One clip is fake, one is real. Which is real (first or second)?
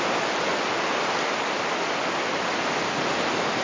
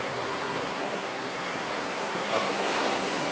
first